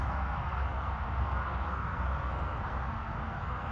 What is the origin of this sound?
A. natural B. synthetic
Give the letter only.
B